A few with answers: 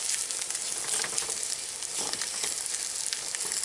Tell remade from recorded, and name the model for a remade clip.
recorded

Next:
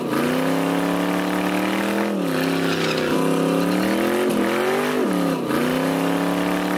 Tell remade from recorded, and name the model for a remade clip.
recorded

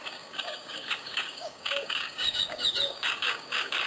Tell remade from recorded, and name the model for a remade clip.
remade, codec, DAC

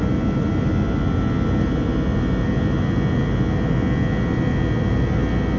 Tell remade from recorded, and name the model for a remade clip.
recorded